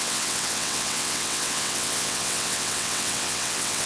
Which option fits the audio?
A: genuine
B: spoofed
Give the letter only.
B